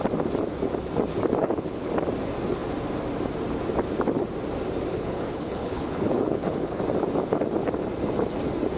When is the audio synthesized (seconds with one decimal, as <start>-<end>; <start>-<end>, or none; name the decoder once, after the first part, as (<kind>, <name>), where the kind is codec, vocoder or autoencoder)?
1.4-1.9 (codec, HILCodec); 4.9-6.8